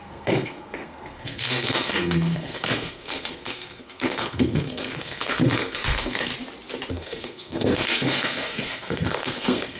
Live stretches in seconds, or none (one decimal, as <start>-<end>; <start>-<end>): 6.3-6.9